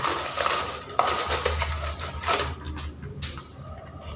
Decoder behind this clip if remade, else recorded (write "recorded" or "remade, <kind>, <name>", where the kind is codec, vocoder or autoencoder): recorded